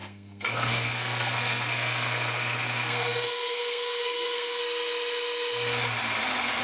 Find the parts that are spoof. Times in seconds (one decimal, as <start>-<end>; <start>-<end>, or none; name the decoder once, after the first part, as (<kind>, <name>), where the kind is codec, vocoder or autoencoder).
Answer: 0.0-4.6 (codec, SNAC)